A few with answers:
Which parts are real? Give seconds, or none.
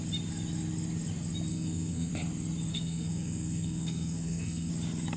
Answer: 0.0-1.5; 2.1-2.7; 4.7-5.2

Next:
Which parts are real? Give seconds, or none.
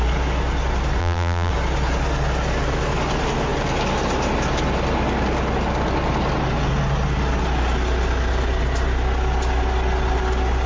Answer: 0.0-1.0; 1.5-10.7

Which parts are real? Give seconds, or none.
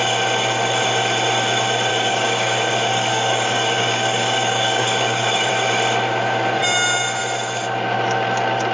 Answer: 0.0-1.9; 5.5-8.7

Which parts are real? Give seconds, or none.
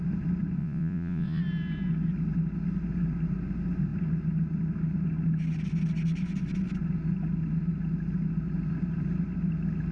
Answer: 0.0-0.6; 1.4-9.9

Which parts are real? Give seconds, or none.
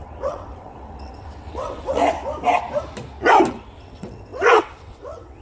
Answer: 2.0-3.5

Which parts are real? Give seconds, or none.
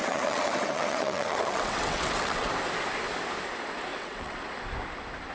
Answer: 2.5-3.9; 4.4-5.3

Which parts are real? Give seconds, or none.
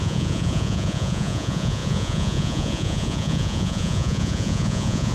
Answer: none